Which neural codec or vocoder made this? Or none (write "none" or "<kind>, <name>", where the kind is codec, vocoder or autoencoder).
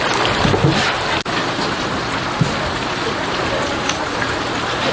none